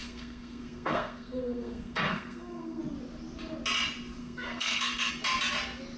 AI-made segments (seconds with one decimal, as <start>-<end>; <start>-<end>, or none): 0.0-2.8; 4.2-5.1